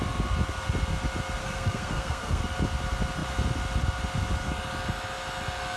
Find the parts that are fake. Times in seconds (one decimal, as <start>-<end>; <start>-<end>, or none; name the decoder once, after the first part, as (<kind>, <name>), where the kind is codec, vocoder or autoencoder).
1.4-2.4 (codec, SNAC)